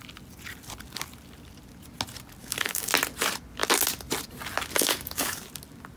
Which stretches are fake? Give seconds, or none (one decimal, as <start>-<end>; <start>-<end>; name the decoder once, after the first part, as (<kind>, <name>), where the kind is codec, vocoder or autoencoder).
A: 2.4-2.9 (codec, DAC); 4.7-5.4